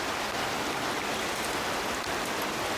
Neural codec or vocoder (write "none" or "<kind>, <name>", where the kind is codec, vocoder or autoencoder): none